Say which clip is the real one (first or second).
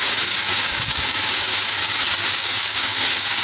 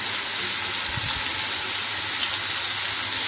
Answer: second